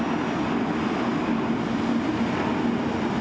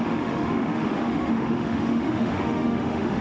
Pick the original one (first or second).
first